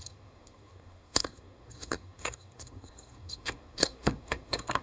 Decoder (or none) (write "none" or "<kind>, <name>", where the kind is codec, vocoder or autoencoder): codec, SNAC